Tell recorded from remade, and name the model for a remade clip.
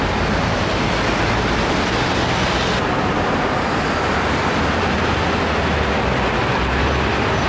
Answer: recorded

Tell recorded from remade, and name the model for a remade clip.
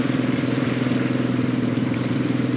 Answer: remade, vocoder, BigVGAN v2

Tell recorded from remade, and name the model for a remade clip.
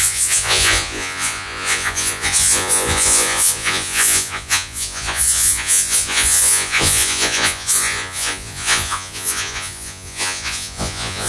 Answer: remade, vocoder, Vocos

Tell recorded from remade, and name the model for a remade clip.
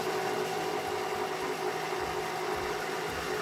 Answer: recorded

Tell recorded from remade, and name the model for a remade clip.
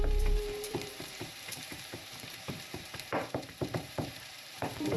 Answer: remade, vocoder, BigVGAN v2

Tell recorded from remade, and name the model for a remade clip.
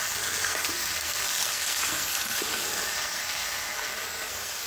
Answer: remade, codec, SNAC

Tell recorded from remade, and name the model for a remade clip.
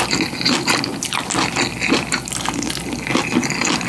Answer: recorded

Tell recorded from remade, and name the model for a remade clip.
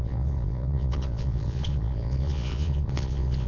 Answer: remade, vocoder, Vocos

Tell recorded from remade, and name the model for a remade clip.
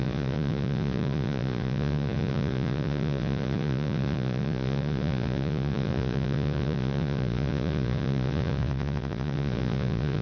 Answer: remade, vocoder, Vocos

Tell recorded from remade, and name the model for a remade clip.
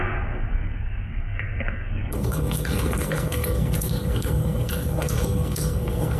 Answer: remade, codec, SNAC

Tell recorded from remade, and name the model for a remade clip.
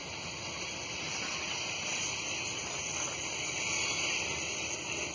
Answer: recorded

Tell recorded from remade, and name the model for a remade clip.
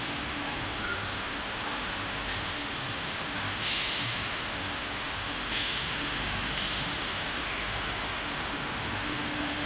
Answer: remade, autoencoder, DAC-VAE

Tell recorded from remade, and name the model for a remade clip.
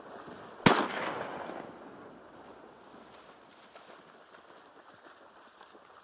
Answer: recorded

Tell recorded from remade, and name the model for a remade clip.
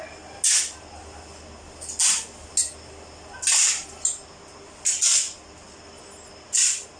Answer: recorded